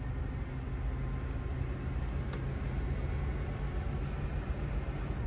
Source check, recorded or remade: recorded